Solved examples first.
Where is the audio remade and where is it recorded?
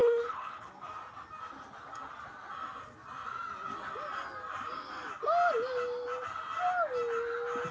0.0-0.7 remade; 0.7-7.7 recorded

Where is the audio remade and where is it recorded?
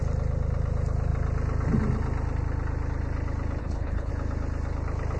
0.0-3.6 recorded; 3.6-4.1 remade; 4.1-5.2 recorded